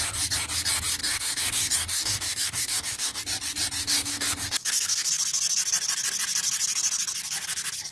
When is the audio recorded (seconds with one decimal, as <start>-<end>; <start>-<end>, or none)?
0.0-1.0; 3.2-3.8; 5.1-7.9